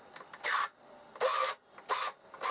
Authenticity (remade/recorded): recorded